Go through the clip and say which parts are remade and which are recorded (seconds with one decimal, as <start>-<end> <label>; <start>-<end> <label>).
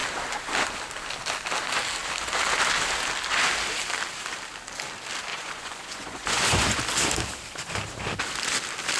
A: 0.0-5.3 recorded; 5.3-6.8 remade; 6.8-9.0 recorded